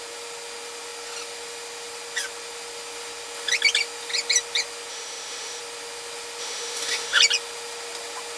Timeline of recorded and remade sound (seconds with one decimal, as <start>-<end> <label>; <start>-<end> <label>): 0.0-4.9 recorded; 4.9-5.6 remade; 5.6-6.4 recorded; 6.4-7.2 remade; 7.2-8.4 recorded